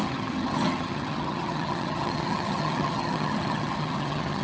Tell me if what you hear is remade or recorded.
remade